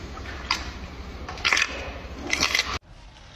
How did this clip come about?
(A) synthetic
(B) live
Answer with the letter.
B